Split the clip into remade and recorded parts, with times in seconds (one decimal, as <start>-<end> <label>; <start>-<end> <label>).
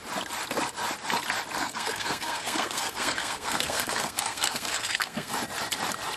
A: 0.0-1.6 recorded; 1.6-5.3 remade; 5.3-6.2 recorded